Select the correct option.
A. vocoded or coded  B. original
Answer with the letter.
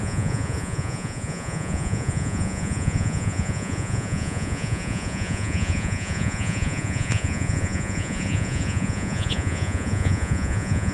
A